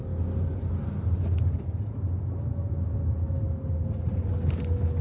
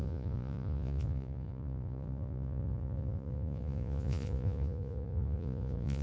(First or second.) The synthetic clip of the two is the second